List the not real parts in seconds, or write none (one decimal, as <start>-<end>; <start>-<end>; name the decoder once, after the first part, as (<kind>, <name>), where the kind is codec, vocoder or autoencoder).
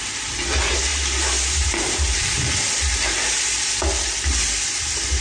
0.9-2.7 (vocoder, BigVGAN v2)